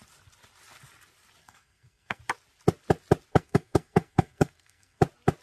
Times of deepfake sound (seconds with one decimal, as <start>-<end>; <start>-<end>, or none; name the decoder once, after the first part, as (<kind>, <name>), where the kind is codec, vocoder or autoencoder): 1.4-2.2 (codec, SNAC); 3.3-5.0